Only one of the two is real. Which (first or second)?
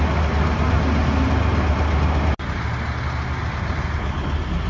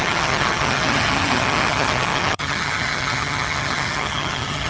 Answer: first